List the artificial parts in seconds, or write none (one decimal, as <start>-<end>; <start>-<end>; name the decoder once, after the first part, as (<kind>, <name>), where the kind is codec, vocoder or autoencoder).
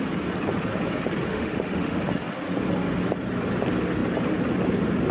1.3-2.0 (autoencoder, DAC-VAE)